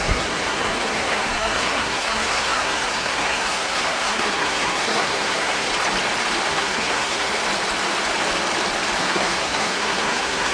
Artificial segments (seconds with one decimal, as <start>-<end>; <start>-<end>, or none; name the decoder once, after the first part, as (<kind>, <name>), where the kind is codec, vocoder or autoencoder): 0.0-5.7 (codec, SNAC); 6.5-7.3; 9.0-10.5